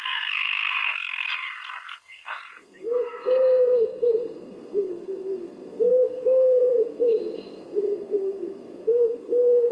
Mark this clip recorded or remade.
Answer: remade